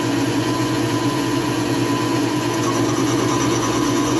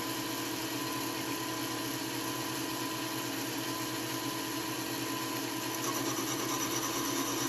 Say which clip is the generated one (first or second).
first